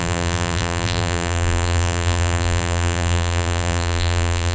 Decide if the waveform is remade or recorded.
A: remade